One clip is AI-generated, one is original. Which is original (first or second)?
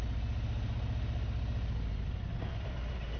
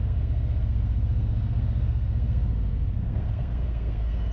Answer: first